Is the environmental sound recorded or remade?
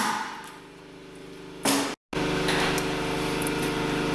recorded